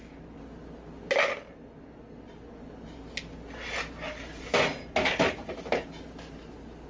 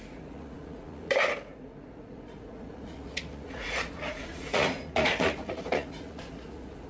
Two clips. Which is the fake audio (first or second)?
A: second